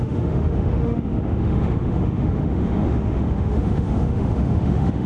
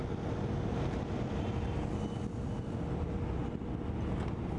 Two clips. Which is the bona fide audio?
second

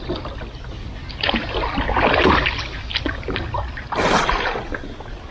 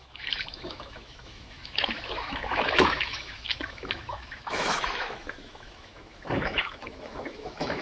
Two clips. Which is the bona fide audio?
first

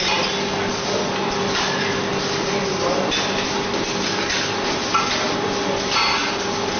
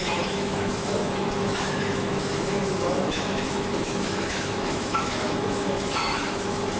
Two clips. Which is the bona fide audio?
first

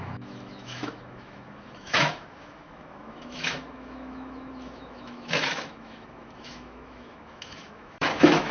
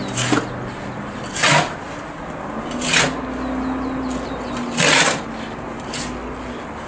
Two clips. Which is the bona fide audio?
second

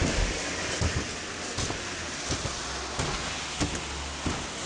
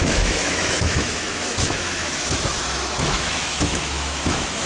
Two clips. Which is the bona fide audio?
first